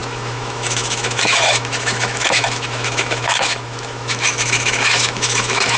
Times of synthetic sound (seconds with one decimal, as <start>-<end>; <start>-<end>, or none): 0.0-5.8